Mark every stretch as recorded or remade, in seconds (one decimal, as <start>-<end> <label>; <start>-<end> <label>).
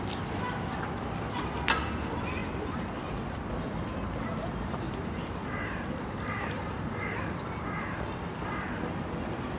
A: 0.0-9.6 recorded